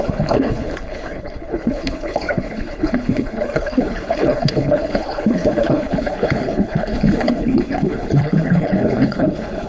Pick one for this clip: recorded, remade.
remade